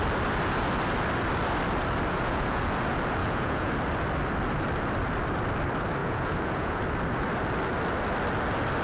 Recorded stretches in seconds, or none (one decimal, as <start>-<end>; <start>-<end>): 0.0-2.1; 2.6-3.2; 3.7-6.0; 6.8-8.8